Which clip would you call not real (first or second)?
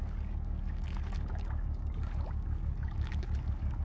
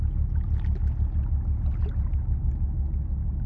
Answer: first